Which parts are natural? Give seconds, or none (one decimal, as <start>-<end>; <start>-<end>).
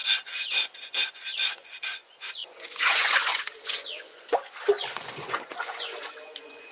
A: none